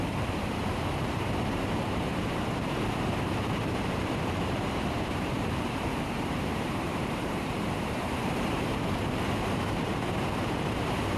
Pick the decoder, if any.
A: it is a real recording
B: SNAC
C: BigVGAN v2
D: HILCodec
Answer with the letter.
C